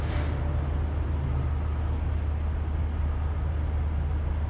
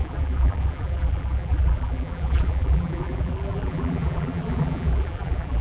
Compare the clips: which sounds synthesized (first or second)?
second